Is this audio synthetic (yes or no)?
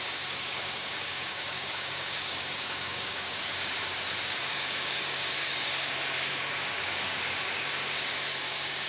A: yes